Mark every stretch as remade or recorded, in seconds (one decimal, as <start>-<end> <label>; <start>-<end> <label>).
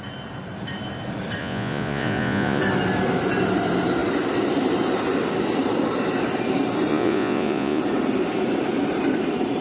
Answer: 0.0-1.4 recorded; 1.4-2.6 remade; 2.6-6.9 recorded; 6.9-7.8 remade; 7.8-9.6 recorded